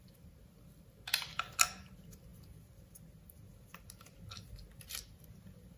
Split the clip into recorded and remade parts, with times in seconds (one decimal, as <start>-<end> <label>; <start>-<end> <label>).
0.0-5.8 recorded